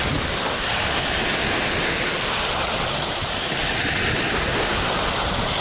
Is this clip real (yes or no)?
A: yes